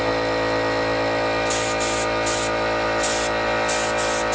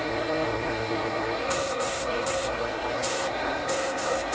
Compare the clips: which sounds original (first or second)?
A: first